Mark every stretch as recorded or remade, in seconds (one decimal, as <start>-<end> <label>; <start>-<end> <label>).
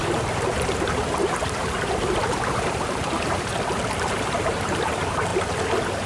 0.0-3.5 remade; 3.5-4.1 recorded; 4.1-5.3 remade; 5.3-6.1 recorded